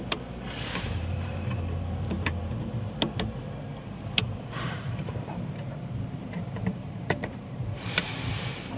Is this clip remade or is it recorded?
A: remade